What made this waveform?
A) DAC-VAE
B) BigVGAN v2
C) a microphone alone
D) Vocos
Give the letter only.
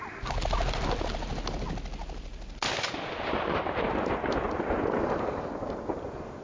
C